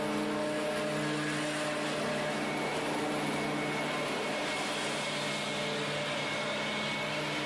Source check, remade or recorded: recorded